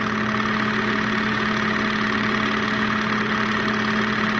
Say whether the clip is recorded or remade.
recorded